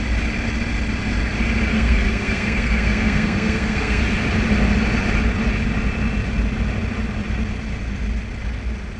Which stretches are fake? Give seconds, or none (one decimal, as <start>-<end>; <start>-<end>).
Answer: 1.7-4.0